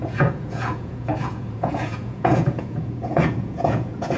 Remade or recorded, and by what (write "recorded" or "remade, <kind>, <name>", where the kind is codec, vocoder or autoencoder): remade, vocoder, Vocos